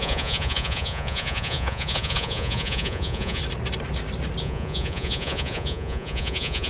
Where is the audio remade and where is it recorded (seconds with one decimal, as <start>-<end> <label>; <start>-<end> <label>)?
0.0-3.4 remade; 3.4-4.4 recorded; 4.4-6.7 remade